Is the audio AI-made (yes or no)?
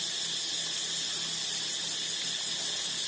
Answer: no